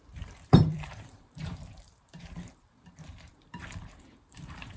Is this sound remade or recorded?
remade